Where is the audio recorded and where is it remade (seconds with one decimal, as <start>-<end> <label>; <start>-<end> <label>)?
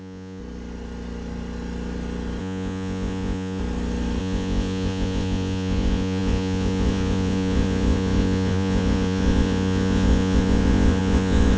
0.0-0.4 remade; 0.4-2.4 recorded; 2.4-3.6 remade; 3.6-4.2 recorded; 4.2-11.6 remade